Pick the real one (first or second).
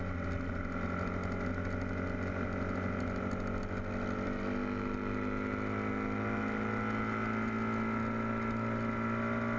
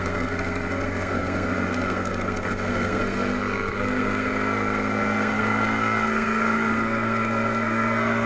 first